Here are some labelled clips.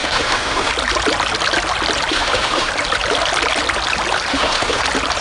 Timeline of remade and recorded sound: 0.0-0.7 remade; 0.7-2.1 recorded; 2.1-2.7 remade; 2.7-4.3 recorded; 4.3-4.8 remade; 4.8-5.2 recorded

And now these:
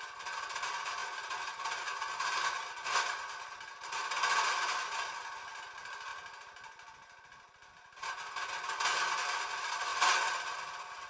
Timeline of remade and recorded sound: 0.0-9.9 recorded; 9.9-10.6 remade; 10.6-11.1 recorded